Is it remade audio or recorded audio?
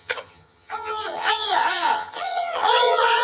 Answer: remade